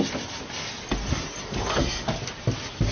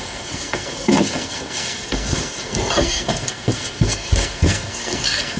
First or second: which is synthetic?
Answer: second